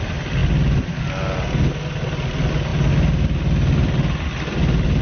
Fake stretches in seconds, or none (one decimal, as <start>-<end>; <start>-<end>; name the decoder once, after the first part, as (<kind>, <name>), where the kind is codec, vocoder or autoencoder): none